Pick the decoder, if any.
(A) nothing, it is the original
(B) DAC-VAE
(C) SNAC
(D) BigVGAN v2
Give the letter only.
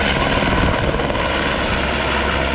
A